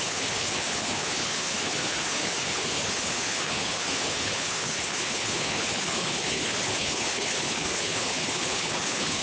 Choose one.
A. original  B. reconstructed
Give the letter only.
B